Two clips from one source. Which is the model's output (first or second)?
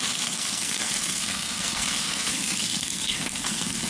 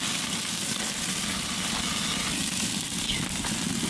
first